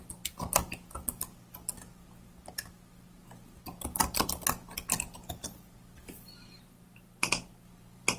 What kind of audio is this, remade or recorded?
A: recorded